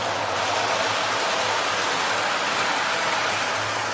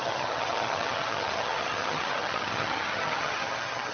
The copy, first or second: second